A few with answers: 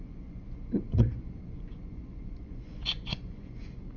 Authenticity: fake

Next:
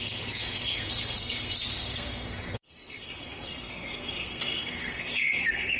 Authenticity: fake